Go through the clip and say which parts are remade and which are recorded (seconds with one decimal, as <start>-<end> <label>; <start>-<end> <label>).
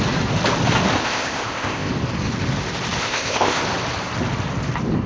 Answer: 0.0-1.0 recorded; 1.0-1.9 remade; 1.9-3.0 recorded; 3.0-3.6 remade; 3.6-5.1 recorded